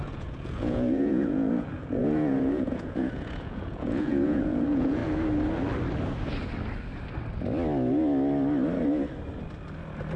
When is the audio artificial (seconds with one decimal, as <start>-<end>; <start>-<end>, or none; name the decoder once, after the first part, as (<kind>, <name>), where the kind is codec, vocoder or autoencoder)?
0.0-5.0 (vocoder, Vocos)